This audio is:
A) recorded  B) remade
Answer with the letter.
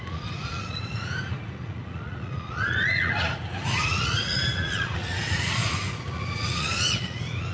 B